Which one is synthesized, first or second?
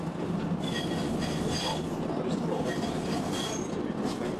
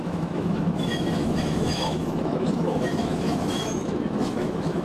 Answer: second